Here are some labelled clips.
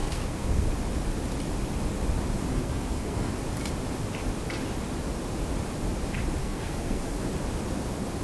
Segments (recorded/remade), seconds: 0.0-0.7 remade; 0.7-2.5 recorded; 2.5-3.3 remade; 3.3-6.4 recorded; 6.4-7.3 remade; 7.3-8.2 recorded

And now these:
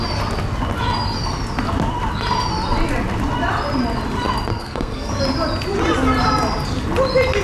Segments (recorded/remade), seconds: 0.0-4.5 recorded; 4.5-5.1 remade; 5.1-7.4 recorded

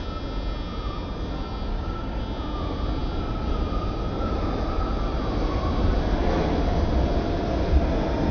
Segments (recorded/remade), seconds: 0.0-1.7 recorded; 1.7-2.2 remade; 2.2-8.3 recorded